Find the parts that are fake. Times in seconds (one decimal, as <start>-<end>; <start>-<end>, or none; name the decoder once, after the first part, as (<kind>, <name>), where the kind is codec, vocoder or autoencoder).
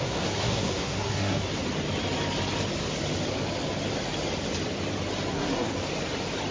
0.0-1.4 (codec, SNAC); 5.3-5.7